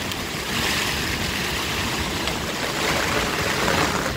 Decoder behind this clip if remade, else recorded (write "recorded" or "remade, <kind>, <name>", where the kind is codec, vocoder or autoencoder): recorded